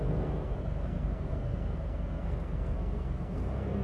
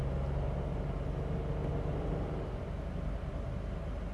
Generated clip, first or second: first